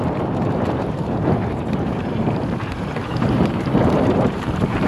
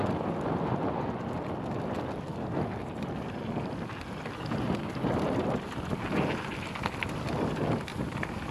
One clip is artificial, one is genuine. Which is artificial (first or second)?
first